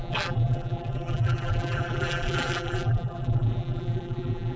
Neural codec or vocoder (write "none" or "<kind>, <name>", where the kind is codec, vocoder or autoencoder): vocoder, BigVGAN v2